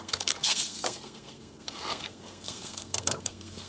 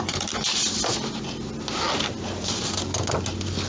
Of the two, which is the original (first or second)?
second